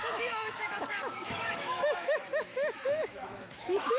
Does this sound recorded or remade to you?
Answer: remade